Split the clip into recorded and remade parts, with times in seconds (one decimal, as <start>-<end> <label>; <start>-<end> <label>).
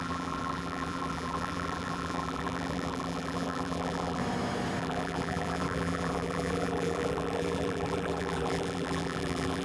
0.0-4.2 remade; 4.2-4.8 recorded; 4.8-9.6 remade